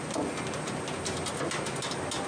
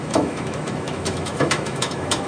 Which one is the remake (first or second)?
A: second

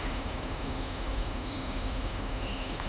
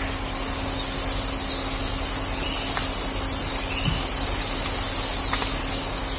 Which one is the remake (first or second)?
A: first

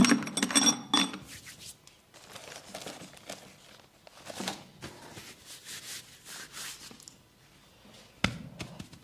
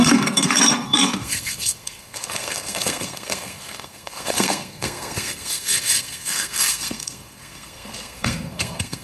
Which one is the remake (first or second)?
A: second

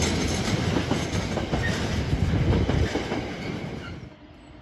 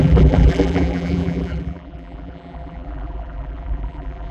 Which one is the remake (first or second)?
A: second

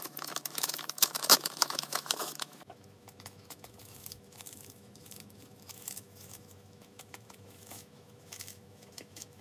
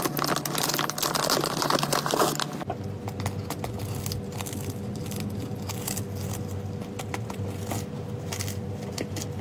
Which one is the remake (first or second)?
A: first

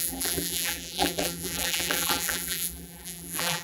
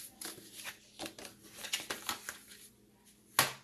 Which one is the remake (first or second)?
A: first